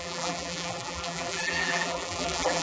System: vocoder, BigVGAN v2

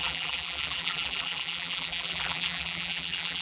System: vocoder, BigVGAN v2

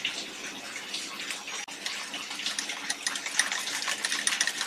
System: none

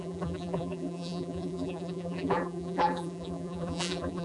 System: vocoder, BigVGAN v2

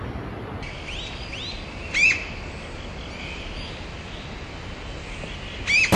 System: none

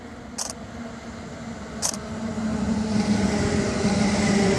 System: none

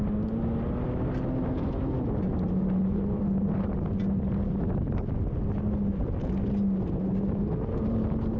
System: none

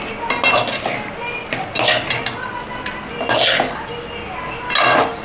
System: none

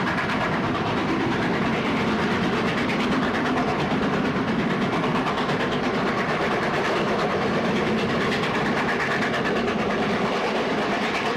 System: vocoder, BigVGAN v2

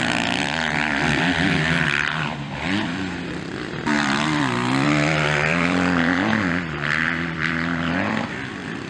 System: vocoder, BigVGAN v2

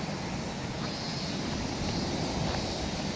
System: none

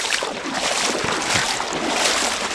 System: vocoder, BigVGAN v2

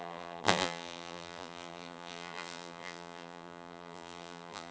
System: vocoder, BigVGAN v2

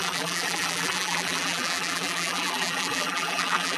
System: vocoder, BigVGAN v2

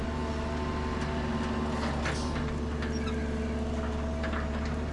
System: none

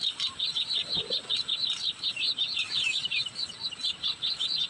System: vocoder, BigVGAN v2